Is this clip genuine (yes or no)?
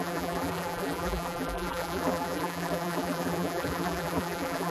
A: no